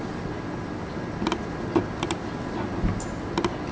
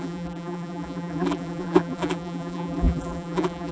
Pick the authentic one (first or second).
first